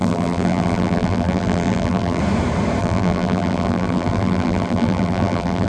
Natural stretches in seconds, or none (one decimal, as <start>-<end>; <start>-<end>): 2.2-2.8